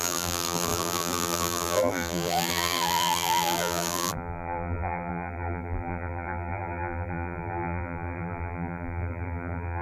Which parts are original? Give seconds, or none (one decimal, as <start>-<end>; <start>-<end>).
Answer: none